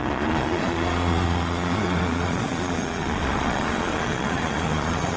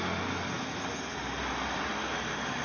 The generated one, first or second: first